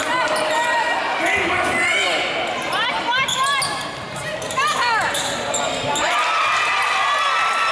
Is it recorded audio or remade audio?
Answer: recorded